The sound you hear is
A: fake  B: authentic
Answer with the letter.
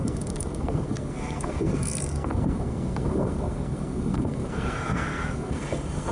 A